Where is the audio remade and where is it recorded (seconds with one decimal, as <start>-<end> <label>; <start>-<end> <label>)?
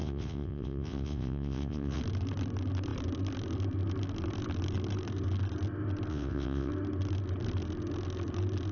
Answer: 0.0-2.0 remade; 2.0-6.1 recorded; 6.1-6.7 remade; 6.7-8.7 recorded